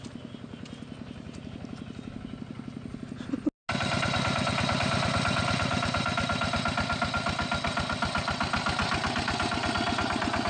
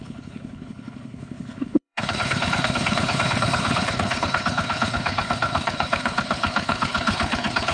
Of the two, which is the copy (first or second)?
second